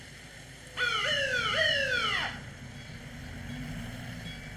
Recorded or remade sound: recorded